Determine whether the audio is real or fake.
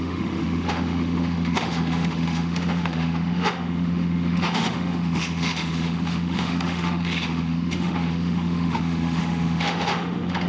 fake